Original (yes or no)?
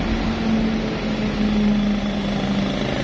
yes